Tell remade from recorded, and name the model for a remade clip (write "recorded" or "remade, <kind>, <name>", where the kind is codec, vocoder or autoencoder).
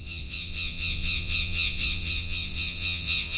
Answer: remade, vocoder, WaveNeXt